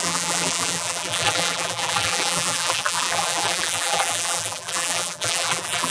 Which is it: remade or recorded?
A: remade